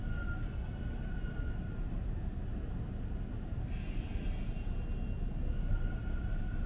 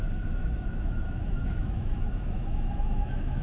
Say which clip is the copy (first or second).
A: second